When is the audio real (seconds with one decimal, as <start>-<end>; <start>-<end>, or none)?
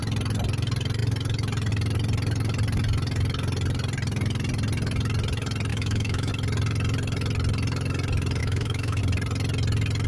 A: 0.0-5.7; 6.3-8.4; 9.0-10.1